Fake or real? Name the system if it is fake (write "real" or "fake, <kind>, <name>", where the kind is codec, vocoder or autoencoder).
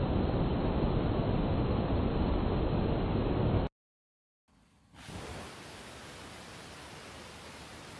real